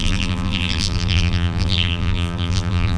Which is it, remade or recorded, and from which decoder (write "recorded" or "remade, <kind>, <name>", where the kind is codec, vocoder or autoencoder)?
remade, vocoder, BigVGAN v2